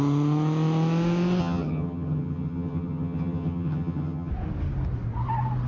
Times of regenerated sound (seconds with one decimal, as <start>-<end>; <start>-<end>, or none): 1.4-4.3